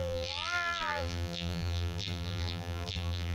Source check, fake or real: fake